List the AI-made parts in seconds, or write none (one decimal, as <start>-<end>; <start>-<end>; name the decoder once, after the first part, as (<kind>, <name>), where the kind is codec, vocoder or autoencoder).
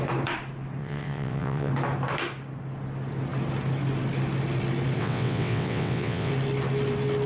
0.8-1.7 (vocoder, WaveNeXt); 5.0-6.3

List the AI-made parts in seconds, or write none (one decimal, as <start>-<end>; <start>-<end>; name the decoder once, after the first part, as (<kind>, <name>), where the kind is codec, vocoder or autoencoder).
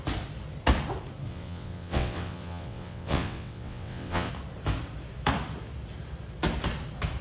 1.3-4.3 (vocoder, WaveNeXt)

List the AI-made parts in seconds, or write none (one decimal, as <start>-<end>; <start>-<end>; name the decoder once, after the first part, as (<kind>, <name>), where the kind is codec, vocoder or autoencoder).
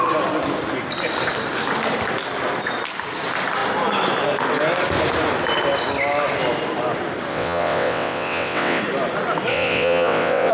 7.3-8.8 (vocoder, WaveNeXt); 9.5-10.5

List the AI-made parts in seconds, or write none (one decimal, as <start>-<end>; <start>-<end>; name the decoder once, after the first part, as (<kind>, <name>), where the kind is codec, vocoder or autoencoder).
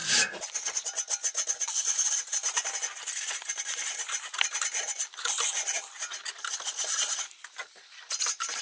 none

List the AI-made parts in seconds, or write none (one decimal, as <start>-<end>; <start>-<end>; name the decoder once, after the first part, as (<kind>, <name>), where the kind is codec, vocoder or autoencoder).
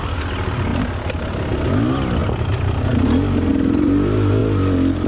none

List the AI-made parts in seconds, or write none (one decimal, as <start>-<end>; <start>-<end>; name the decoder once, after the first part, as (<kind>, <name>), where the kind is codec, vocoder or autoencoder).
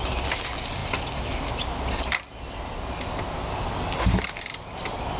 none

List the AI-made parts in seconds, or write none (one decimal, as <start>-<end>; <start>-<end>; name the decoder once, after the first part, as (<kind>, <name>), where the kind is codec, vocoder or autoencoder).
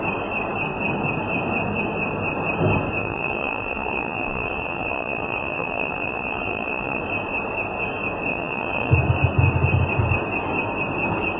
3.0-7.0 (vocoder, WaveNeXt); 8.3-8.9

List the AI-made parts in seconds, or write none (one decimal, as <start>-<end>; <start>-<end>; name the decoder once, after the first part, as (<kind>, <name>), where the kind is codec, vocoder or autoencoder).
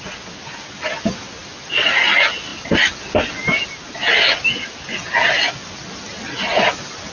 none